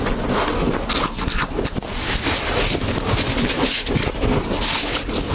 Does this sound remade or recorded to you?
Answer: recorded